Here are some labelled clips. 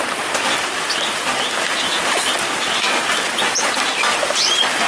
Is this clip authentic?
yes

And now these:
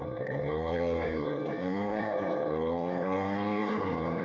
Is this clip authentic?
no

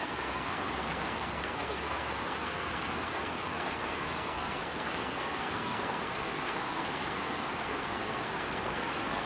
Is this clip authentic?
no